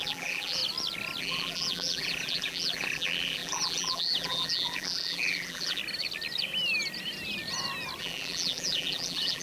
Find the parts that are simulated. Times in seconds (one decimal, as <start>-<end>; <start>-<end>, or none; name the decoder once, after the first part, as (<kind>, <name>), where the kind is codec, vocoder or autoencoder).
0.0-0.6 (vocoder, BigVGAN v2); 1.2-5.8; 8.0-9.4